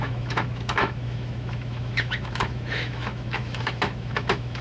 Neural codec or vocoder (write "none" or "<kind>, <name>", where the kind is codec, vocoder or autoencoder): autoencoder, DAC-VAE